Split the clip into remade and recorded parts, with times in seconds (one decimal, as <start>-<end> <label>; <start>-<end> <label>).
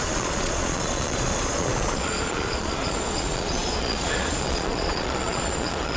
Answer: 0.0-6.0 remade